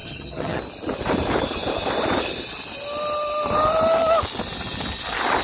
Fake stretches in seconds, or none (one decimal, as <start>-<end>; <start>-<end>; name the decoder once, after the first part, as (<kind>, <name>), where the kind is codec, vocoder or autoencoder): 0.0-0.6 (vocoder, HiFi-GAN)

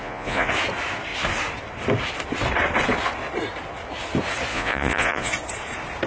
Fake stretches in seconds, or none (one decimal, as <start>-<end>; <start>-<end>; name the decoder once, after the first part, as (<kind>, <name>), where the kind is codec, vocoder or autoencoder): 0.0-0.5 (vocoder, Vocos); 4.5-5.3

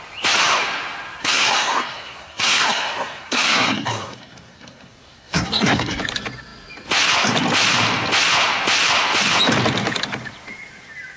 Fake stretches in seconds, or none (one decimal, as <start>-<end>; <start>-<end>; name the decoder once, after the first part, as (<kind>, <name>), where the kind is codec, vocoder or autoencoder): 1.2-6.0 (codec, SNAC)

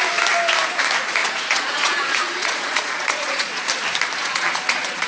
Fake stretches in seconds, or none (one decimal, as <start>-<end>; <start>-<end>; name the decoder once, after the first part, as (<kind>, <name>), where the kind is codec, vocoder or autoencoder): 1.2-3.7 (vocoder, Vocos); 4.2-5.1

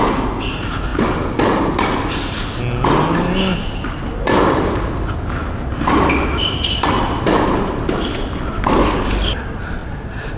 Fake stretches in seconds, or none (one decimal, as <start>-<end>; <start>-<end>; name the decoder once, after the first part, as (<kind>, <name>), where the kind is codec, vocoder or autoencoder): none

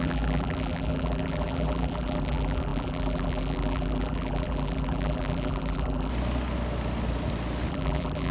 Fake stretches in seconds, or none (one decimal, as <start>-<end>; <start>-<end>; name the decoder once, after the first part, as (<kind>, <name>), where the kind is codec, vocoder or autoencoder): 0.0-6.1 (vocoder, BigVGAN v2); 7.7-8.3